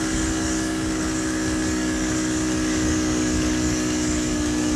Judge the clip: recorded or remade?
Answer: remade